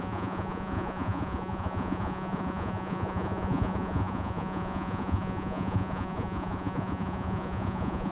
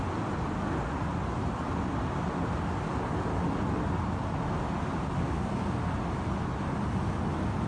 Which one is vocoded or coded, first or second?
first